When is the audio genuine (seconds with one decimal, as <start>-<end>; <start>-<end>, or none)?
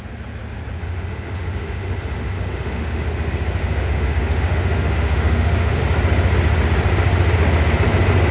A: 0.0-0.8; 3.1-3.6; 5.8-8.3